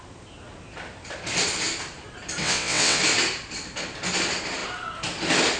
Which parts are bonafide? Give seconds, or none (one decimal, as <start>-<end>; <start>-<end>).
0.0-2.4; 3.0-5.6